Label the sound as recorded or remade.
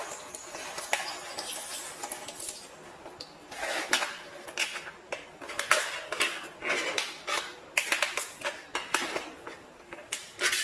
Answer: recorded